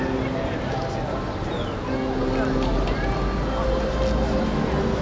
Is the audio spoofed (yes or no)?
no